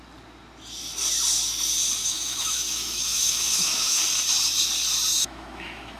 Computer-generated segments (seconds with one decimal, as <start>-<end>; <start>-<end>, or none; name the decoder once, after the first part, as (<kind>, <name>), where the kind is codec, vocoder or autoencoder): 2.0-4.0 (autoencoder, DAC-VAE); 5.2-6.0